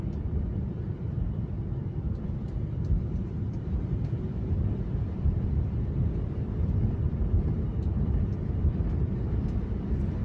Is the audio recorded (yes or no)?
no